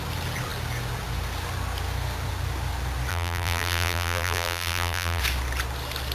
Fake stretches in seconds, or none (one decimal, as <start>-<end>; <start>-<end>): 3.1-5.2